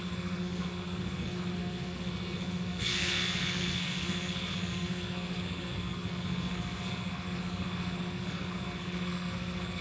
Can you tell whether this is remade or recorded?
remade